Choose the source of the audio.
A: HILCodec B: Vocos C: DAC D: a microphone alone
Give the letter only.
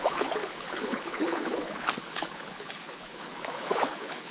A